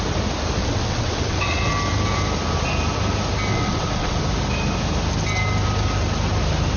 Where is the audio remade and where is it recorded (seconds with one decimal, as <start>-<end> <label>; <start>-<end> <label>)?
0.0-0.6 recorded; 0.6-1.7 remade; 1.7-3.5 recorded; 3.5-4.2 remade; 4.2-6.8 recorded